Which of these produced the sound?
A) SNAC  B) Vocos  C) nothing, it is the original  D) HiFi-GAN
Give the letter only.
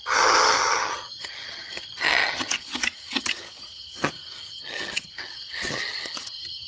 D